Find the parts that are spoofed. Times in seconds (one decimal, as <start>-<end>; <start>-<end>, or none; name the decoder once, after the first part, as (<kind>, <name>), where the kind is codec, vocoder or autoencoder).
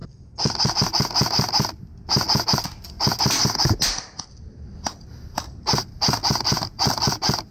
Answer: none